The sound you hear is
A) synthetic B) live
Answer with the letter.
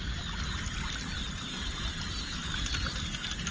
B